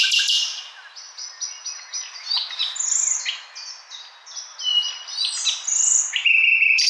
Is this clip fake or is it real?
real